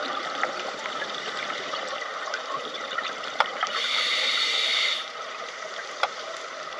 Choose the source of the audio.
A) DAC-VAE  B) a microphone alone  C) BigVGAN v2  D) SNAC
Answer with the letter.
C